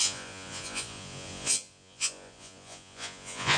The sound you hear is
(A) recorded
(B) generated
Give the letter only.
B